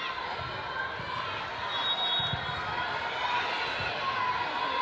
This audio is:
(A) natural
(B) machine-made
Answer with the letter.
A